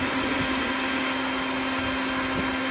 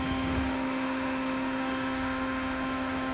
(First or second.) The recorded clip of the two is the first